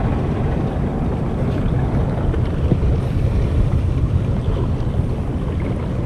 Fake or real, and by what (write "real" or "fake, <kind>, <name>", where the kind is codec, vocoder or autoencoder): real